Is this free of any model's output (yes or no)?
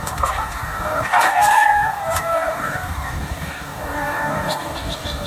no